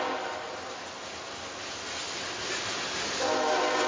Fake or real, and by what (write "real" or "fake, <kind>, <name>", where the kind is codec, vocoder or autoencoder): real